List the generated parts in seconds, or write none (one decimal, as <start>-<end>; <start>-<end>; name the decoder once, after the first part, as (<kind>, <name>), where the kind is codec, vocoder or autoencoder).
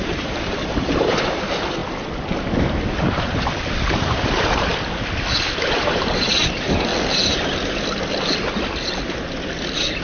0.0-1.8 (vocoder, BigVGAN v2); 3.0-4.7; 5.4-6.9